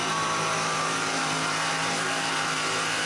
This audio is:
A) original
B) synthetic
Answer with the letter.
B